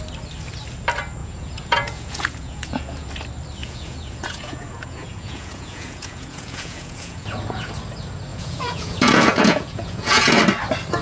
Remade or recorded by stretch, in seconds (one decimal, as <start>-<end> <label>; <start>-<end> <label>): 0.0-1.2 recorded; 1.2-3.1 remade; 3.1-3.6 recorded; 3.6-7.7 remade; 7.7-8.3 recorded; 8.3-10.4 remade; 10.4-11.0 recorded